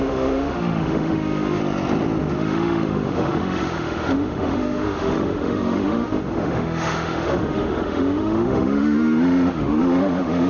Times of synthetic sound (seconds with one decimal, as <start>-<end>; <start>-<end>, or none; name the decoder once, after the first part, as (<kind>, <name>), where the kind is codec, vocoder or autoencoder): 0.0-1.6 (autoencoder, DAC-VAE); 2.2-10.5